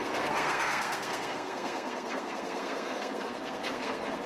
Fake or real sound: fake